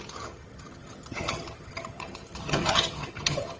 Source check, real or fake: fake